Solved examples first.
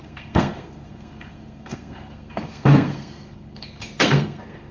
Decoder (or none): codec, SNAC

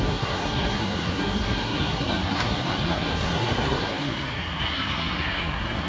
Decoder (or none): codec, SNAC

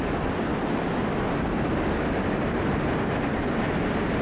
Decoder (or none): none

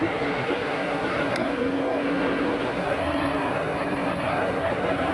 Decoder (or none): codec, SNAC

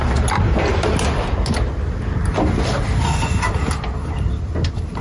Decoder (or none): none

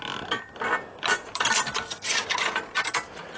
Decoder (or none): none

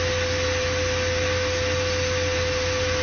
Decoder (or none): none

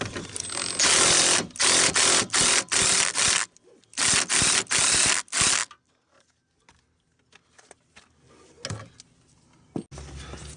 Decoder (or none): none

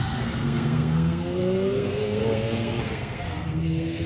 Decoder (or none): codec, SNAC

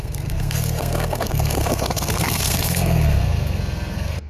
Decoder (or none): codec, SNAC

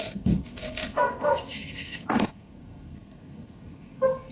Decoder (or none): codec, SNAC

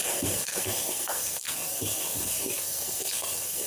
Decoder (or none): codec, SNAC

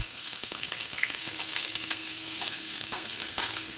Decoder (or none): codec, SNAC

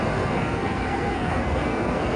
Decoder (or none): codec, SNAC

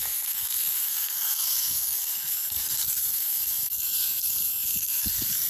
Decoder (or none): codec, SNAC